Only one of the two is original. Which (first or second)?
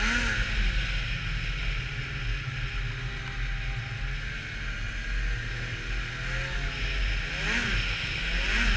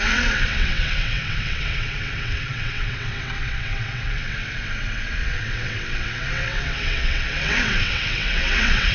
first